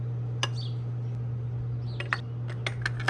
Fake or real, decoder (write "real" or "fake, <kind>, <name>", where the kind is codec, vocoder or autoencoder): real